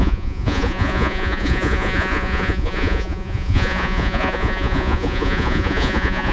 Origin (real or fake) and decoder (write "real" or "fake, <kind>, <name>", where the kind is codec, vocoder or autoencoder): fake, vocoder, Vocos